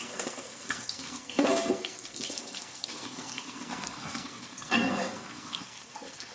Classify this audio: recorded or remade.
remade